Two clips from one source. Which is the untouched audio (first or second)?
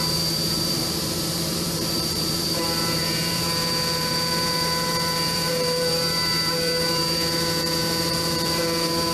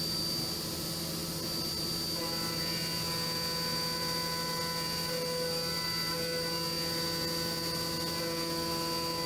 second